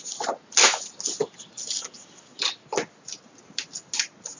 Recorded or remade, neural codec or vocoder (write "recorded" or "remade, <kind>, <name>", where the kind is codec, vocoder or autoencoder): recorded